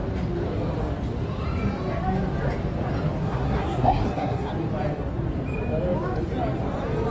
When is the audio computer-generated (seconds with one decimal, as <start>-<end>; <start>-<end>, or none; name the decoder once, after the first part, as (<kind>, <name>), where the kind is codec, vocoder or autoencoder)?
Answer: 3.2-4.5 (codec, SNAC)